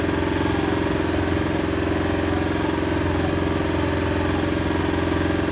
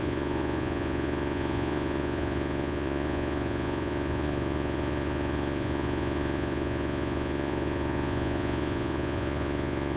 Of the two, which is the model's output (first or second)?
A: second